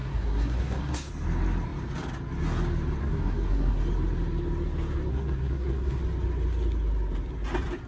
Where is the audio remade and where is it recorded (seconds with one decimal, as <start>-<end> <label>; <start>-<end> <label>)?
0.0-1.1 remade; 1.1-3.0 recorded; 3.0-3.8 remade; 3.8-5.1 recorded; 5.1-6.0 remade; 6.0-7.9 recorded